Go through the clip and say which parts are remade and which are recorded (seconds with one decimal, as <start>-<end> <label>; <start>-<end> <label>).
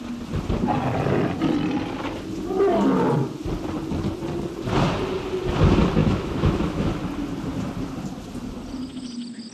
0.0-6.0 recorded; 6.0-6.9 remade; 6.9-9.5 recorded